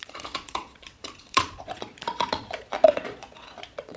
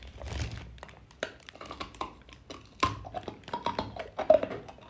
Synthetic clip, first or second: first